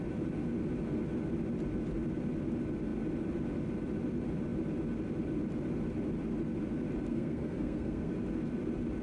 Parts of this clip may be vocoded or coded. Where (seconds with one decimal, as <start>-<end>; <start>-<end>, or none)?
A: 7.1-8.1